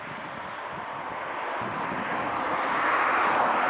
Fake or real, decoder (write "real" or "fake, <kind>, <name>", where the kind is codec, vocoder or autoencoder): real